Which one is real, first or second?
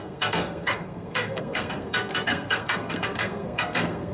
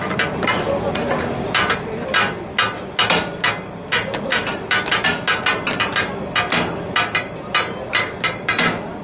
second